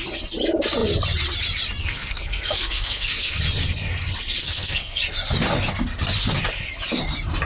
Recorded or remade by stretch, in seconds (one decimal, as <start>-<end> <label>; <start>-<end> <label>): 0.0-1.8 recorded; 1.8-3.4 remade; 3.4-4.4 recorded; 4.4-5.0 remade; 5.0-7.5 recorded